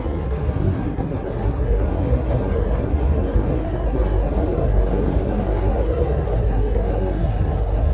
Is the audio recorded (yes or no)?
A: no